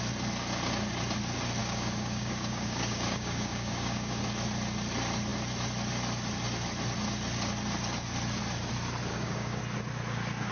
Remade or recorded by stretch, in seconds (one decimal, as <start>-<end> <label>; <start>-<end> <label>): 0.0-1.6 recorded; 1.6-4.2 remade; 4.2-9.1 recorded; 9.1-9.6 remade; 9.6-10.5 recorded